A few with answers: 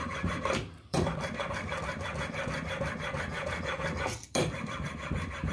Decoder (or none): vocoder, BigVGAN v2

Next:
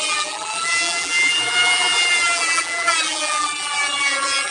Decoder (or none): vocoder, BigVGAN v2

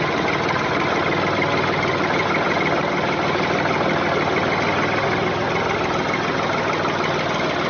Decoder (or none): none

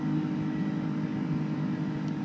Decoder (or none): none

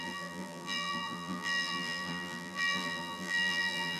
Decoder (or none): vocoder, BigVGAN v2